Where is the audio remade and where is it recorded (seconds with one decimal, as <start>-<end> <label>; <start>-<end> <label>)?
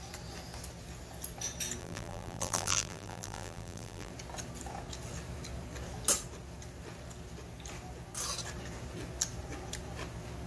0.0-1.8 recorded; 1.8-4.1 remade; 4.1-10.5 recorded